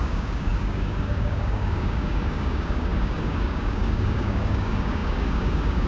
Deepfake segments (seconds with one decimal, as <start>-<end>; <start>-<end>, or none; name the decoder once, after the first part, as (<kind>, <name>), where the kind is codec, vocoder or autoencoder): 0.0-5.9 (codec, DAC)